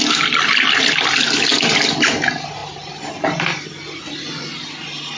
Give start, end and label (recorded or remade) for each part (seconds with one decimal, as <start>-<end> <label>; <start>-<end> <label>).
0.0-5.2 recorded